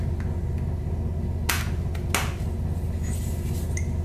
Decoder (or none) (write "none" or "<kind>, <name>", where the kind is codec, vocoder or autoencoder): none